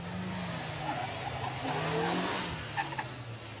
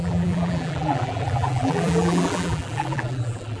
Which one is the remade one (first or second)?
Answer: second